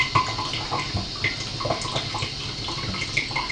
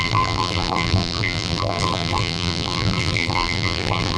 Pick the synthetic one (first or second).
second